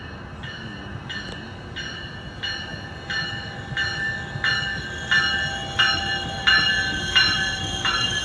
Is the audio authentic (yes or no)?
yes